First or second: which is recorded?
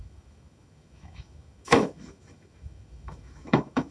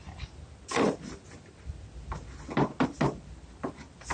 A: second